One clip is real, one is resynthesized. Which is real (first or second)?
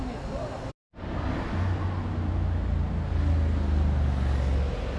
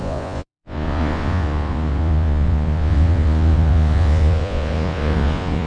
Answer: first